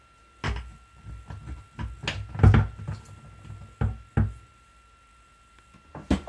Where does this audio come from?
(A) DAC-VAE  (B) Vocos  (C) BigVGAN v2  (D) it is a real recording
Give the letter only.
D